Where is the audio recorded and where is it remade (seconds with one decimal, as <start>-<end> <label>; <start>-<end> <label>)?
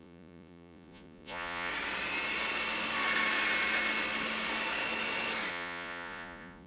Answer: 0.0-1.7 remade; 1.7-5.5 recorded; 5.5-6.7 remade